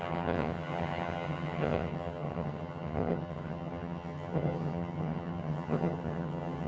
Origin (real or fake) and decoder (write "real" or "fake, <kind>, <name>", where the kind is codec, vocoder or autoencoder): fake, vocoder, HiFi-GAN